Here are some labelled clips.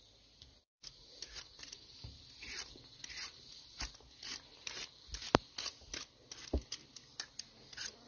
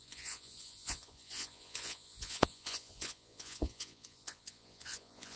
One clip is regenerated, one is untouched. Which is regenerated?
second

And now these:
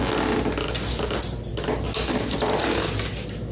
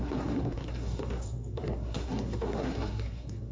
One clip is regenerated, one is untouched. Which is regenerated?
second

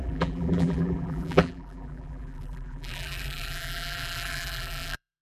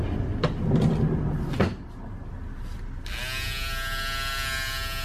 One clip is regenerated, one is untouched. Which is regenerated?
first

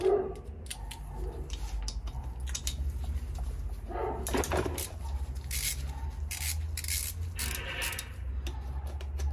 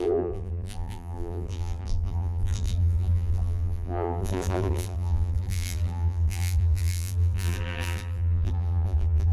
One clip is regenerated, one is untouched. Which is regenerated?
second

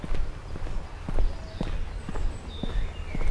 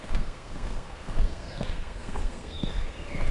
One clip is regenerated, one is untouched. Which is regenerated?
second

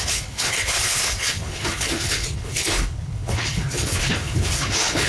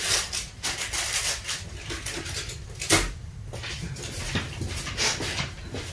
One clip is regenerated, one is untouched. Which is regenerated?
first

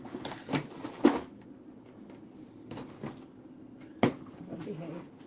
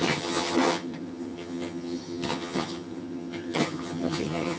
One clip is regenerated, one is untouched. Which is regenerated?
second